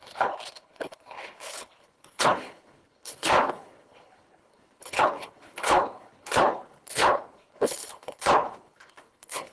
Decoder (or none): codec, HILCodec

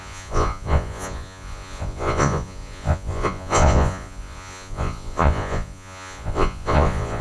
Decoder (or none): vocoder, Vocos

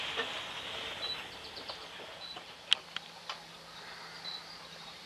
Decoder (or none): none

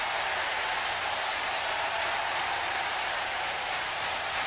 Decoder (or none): vocoder, BigVGAN v2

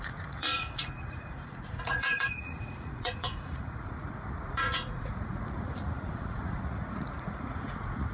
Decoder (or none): vocoder, Vocos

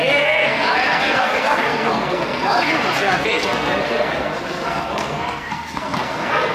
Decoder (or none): codec, SNAC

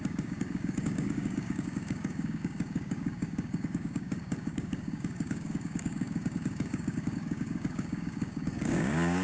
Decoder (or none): codec, DAC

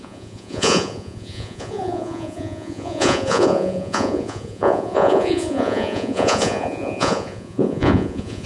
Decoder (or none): vocoder, Vocos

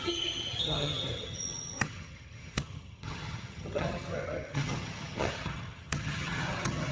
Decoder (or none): vocoder, HiFi-GAN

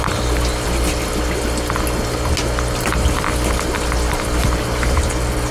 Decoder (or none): none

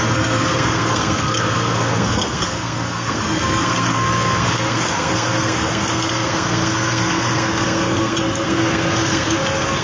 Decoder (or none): codec, SNAC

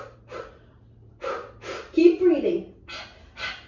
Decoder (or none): none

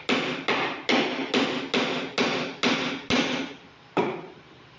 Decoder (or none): none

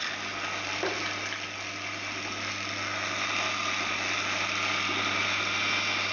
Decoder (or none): none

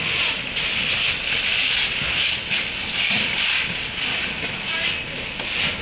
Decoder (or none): none